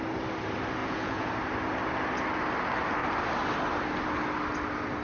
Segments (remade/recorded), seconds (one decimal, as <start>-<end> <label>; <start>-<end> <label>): 0.0-0.8 recorded; 0.8-1.3 remade; 1.3-5.0 recorded